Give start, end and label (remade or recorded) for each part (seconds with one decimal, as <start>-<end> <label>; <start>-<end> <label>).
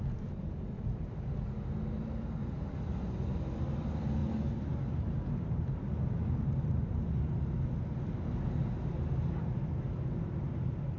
0.0-11.0 recorded